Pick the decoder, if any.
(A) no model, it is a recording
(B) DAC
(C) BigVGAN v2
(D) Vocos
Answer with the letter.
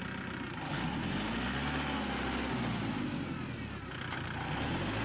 A